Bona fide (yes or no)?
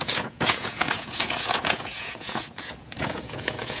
no